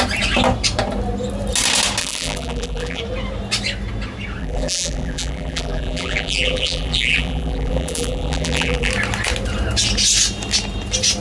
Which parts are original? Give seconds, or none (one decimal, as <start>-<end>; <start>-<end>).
0.0-2.0; 3.0-4.4; 8.9-11.2